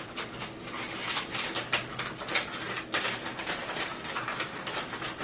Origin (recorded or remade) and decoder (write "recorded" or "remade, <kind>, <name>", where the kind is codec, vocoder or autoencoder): recorded